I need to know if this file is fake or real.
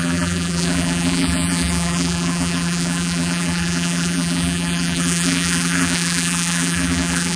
fake